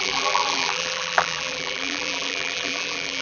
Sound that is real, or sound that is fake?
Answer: fake